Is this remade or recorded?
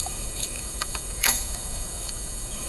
remade